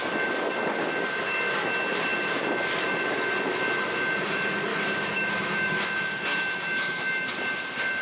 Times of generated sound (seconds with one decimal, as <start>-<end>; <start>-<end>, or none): 4.7-5.8; 6.3-7.3